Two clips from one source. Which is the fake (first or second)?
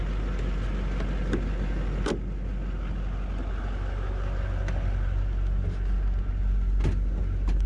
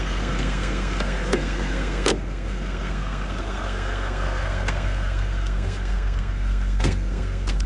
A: second